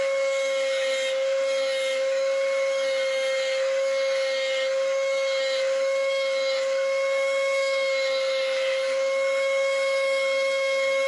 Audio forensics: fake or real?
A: fake